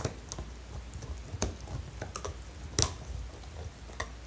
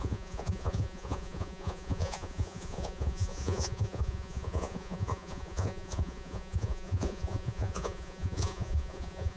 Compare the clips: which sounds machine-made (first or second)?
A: second